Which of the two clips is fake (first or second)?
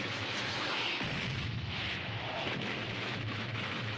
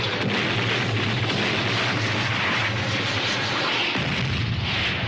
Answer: first